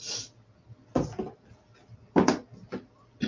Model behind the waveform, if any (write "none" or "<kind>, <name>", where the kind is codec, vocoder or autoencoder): none